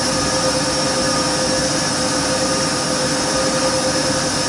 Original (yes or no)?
yes